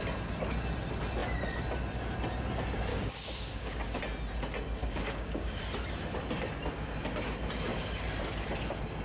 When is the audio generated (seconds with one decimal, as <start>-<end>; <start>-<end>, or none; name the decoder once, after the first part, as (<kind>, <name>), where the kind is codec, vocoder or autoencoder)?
2.9-4.0 (codec, DAC); 4.8-5.6